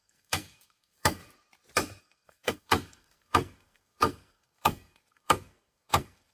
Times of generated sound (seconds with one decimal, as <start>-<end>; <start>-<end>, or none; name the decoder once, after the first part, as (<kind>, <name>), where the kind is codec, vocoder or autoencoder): 0.0-1.2 (codec, SNAC); 2.0-6.3